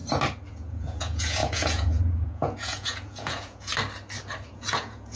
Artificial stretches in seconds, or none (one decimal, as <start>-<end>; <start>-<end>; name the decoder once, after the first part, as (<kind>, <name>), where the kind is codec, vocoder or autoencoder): 0.5-3.7 (vocoder, Vocos); 4.5-5.2